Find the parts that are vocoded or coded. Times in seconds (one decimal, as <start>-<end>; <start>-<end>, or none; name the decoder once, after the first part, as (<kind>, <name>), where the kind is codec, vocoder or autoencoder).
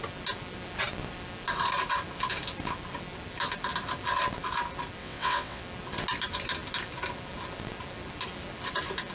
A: 5.0-5.6 (vocoder, WaveNeXt)